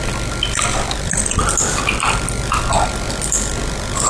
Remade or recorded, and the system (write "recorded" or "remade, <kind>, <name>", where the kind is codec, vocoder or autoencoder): recorded